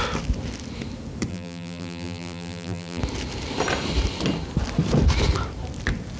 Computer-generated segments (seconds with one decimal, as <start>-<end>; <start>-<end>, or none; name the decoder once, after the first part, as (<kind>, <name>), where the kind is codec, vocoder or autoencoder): 1.3-3.0 (vocoder, BigVGAN v2)